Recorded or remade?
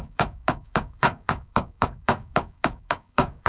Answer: remade